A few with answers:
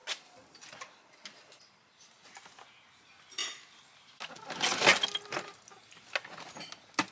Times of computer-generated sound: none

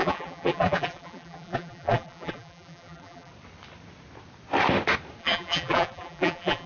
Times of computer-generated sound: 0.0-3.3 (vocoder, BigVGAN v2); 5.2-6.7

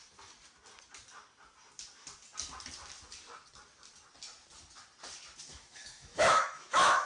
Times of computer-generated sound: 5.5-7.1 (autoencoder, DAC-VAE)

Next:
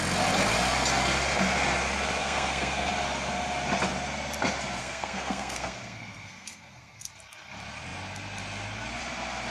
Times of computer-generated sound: 2.2-2.9 (codec, SNAC); 4.8-7.1

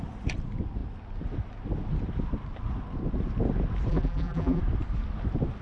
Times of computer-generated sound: 3.9-4.6 (vocoder, BigVGAN v2)

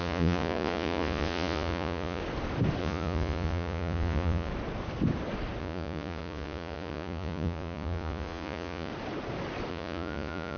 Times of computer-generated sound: 0.0-2.2 (vocoder, Vocos); 2.8-4.5; 5.6-8.9; 9.7-10.6

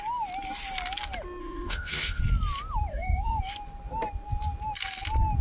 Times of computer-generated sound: 1.4-2.2 (autoencoder, DAC-VAE); 2.9-3.4